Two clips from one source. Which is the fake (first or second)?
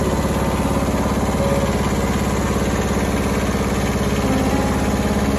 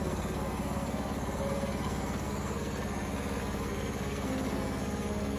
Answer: second